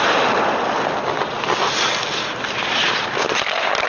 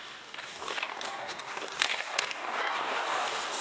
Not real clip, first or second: second